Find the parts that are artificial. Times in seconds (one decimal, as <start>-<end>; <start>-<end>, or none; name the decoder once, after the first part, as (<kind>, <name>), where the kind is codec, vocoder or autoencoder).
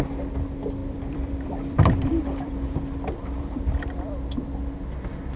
0.8-3.8 (vocoder, BigVGAN v2)